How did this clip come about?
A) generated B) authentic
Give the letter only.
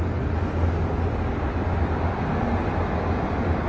B